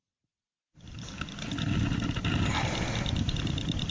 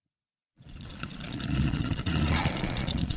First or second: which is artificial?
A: second